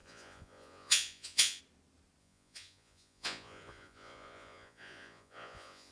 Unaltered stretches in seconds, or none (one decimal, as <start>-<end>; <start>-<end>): 1.6-2.2